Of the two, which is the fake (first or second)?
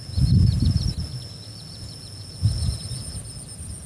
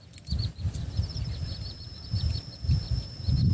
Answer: second